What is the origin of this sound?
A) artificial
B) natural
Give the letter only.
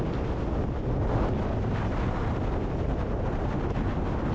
B